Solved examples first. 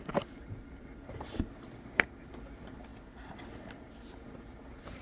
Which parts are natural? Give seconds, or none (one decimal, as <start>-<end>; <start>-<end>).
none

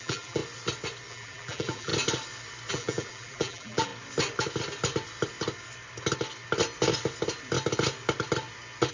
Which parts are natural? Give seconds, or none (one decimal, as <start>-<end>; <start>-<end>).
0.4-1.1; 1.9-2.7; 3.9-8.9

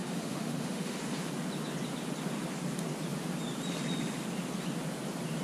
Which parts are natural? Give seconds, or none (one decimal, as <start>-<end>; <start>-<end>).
1.0-5.4

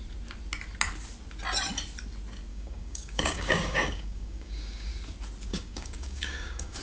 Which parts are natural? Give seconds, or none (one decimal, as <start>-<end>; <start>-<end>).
0.0-2.5; 4.9-5.5

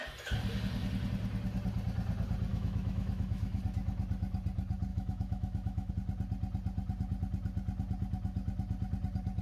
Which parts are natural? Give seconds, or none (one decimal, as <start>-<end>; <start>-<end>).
0.0-2.5; 3.6-4.9; 5.9-9.4